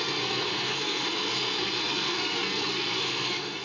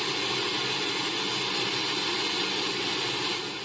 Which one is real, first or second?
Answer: second